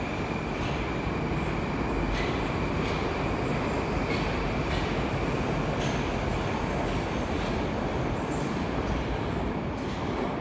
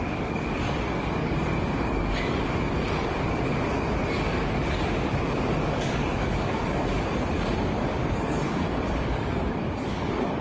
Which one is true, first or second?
first